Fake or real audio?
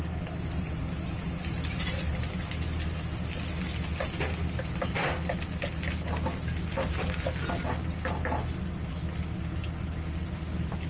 real